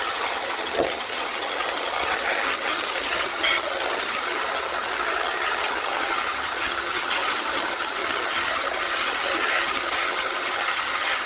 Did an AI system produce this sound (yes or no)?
yes